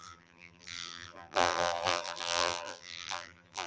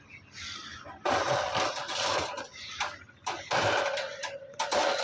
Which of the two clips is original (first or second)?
second